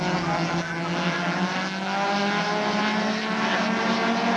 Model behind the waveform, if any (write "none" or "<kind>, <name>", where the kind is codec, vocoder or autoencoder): none